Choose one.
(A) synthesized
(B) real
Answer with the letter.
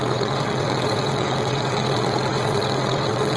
A